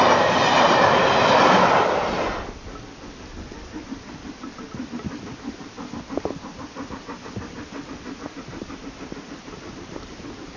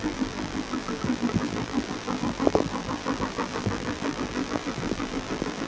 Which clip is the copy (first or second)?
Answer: second